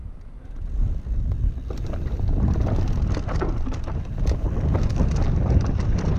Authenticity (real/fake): real